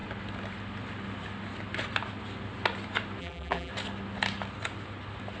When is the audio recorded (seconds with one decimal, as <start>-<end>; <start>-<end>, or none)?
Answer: 0.0-3.2; 3.7-5.4

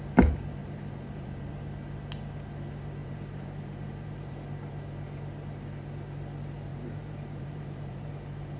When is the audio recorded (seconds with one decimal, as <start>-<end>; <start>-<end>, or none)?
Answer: 0.0-0.6; 1.5-3.0; 4.3-6.7; 8.1-8.6

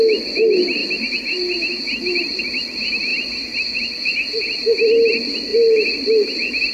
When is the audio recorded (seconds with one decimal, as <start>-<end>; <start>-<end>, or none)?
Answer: 0.0-0.8; 2.4-3.1; 3.8-6.7

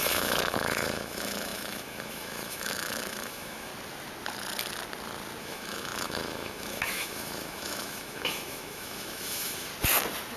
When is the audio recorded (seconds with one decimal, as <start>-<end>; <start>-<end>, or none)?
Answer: 3.7-5.4; 9.7-10.4

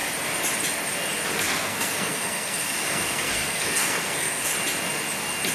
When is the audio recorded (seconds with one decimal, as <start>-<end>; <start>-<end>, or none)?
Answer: 0.0-1.4; 4.5-5.5

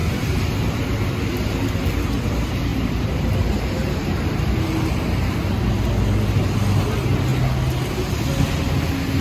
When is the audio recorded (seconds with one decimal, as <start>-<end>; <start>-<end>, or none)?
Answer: 0.8-2.7; 4.5-9.2